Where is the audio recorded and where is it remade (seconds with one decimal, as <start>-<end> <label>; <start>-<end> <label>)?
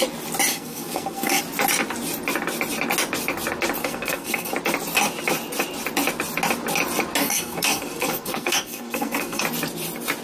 0.0-0.5 recorded; 0.5-1.4 remade; 1.4-3.8 recorded; 3.8-4.5 remade; 4.5-7.2 recorded; 7.2-9.4 remade; 9.4-10.2 recorded